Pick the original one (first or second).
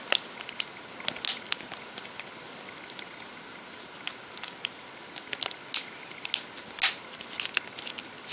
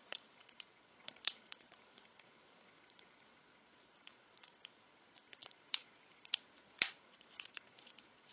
first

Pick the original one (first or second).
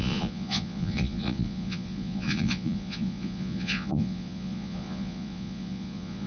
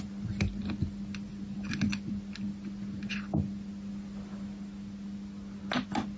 second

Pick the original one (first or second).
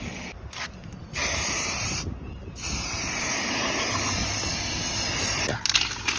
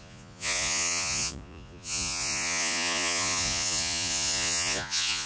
first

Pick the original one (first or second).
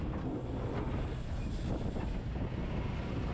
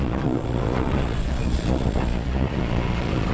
first